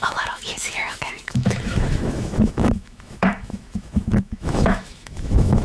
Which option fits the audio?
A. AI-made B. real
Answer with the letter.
A